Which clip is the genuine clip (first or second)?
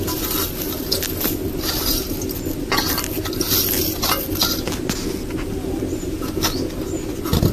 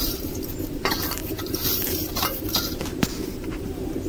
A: first